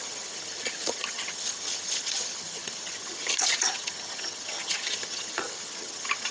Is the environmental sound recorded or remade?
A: remade